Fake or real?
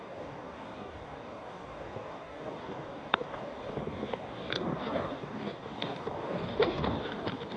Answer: fake